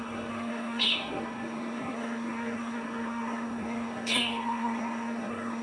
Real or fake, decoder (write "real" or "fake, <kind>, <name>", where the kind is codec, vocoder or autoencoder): fake, codec, SNAC